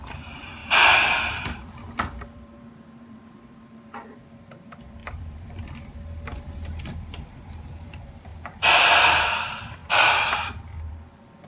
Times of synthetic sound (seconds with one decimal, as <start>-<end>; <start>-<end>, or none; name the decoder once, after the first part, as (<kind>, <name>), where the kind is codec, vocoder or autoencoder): 0.0-11.5 (vocoder, BigVGAN v2)